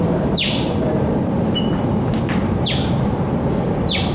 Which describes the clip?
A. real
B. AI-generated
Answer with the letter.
A